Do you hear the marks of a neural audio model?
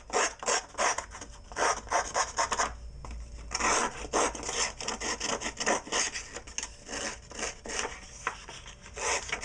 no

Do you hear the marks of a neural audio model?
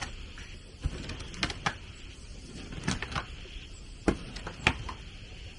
no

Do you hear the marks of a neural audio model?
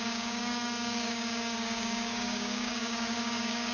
yes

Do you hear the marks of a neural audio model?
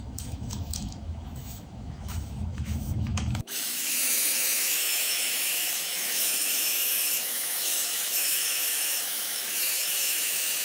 yes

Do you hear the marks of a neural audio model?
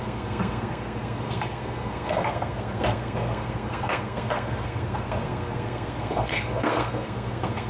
yes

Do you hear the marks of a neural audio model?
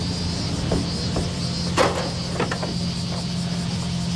no